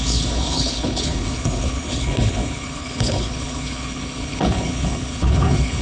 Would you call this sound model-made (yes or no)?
yes